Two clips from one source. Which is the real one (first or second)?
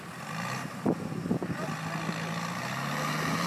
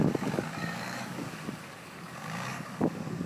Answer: first